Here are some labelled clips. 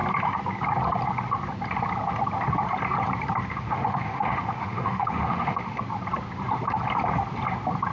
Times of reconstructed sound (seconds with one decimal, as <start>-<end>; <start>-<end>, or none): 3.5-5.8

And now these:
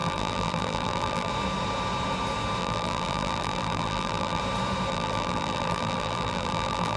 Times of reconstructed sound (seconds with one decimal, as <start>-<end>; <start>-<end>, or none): 0.0-1.3; 2.6-4.4; 4.9-7.0

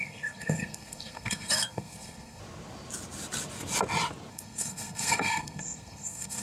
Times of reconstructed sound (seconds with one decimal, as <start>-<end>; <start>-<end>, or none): 0.0-2.4; 4.3-6.4